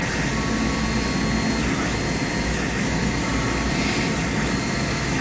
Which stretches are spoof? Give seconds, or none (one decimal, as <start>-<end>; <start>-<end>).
2.4-3.3; 4.6-5.2